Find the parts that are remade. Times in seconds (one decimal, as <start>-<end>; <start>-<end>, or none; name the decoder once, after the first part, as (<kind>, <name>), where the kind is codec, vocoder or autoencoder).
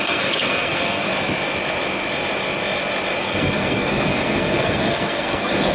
0.0-1.1 (codec, SNAC); 3.2-5.7